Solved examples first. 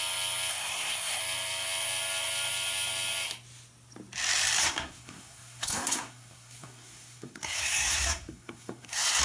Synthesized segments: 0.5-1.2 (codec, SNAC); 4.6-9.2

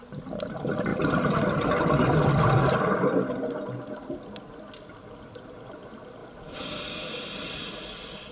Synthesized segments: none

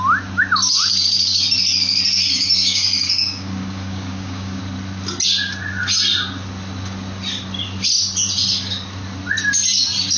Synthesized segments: 2.3-4.6 (codec, DAC)

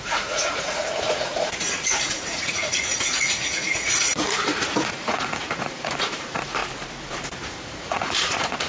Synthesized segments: 0.0-6.6 (vocoder, Vocos); 7.5-8.7